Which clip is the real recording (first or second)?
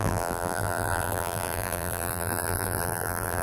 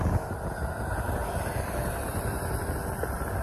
second